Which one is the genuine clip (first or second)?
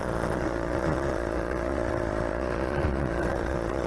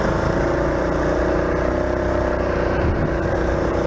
second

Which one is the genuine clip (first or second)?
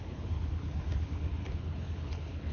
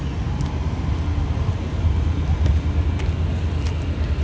second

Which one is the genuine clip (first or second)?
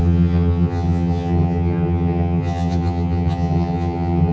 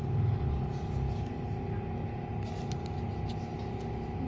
second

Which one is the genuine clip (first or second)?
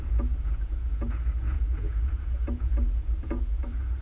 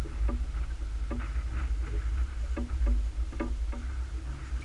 second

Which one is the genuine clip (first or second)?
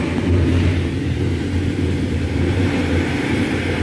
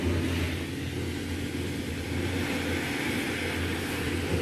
second